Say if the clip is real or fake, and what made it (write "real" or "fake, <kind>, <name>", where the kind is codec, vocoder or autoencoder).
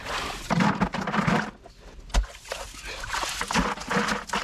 real